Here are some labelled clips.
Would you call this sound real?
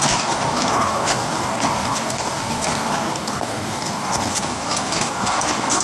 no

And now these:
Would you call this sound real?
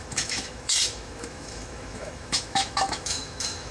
no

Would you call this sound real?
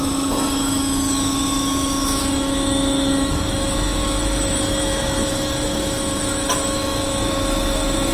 no